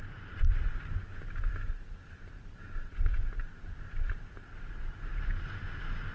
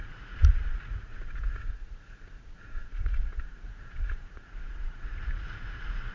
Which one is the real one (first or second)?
first